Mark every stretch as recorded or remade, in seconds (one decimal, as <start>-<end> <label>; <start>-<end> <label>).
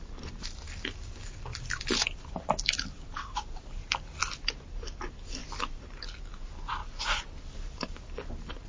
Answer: 0.0-1.5 recorded; 1.5-4.2 remade; 4.2-6.8 recorded; 6.8-7.8 remade; 7.8-8.7 recorded